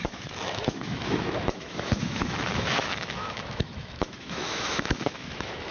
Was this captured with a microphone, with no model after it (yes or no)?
no